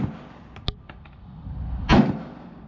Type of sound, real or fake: real